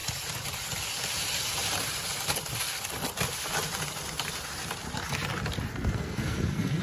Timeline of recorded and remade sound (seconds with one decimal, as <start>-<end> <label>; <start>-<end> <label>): 0.0-5.7 recorded; 5.7-6.8 remade